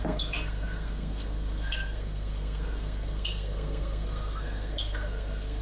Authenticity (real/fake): fake